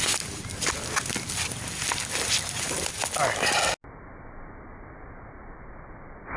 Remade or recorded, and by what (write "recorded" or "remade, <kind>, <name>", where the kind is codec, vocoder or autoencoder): recorded